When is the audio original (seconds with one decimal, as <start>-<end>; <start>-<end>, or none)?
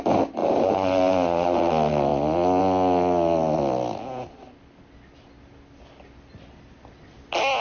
0.0-0.4; 1.6-7.6